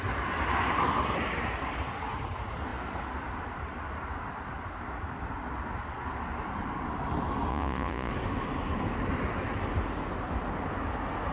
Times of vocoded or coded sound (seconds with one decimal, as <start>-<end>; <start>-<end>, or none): 7.5-8.1